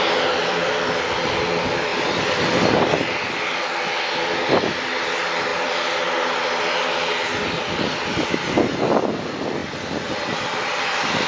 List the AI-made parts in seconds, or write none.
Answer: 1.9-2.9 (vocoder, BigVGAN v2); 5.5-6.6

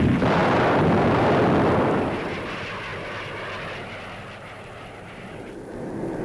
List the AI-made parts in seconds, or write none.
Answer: 0.0-2.9 (vocoder, BigVGAN v2)

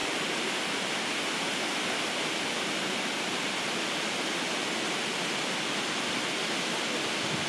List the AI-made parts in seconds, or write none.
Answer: 0.0-1.0 (vocoder, BigVGAN v2); 1.5-3.3

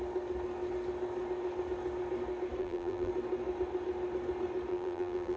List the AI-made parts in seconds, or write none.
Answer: 2.6-3.1 (vocoder, BigVGAN v2); 4.7-5.4

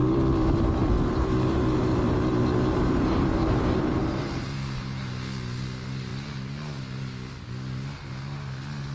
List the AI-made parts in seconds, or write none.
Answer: 0.0-5.1 (vocoder, BigVGAN v2)

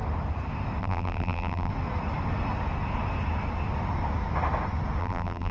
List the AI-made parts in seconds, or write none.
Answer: 0.8-1.7 (vocoder, BigVGAN v2); 5.0-5.5

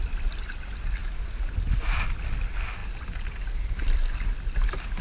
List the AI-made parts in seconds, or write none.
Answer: none

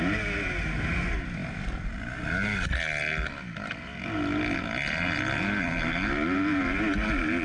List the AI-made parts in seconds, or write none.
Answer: none